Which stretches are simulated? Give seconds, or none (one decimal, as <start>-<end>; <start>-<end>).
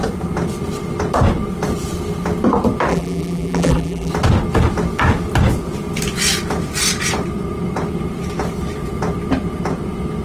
2.9-4.1